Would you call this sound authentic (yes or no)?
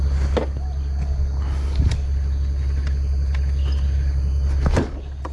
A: yes